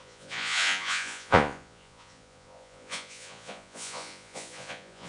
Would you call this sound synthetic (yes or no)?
yes